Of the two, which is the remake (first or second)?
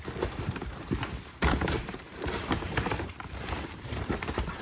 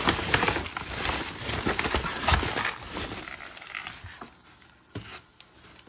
first